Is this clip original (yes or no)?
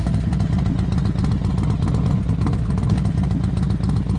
yes